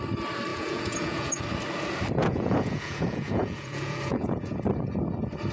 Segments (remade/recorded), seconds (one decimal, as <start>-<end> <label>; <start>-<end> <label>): 0.0-0.5 recorded; 0.5-1.4 remade; 1.4-2.2 recorded; 2.2-4.6 remade; 4.6-5.5 recorded